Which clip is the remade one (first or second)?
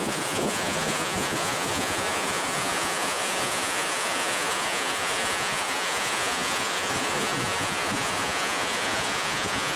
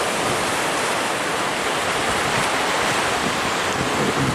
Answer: first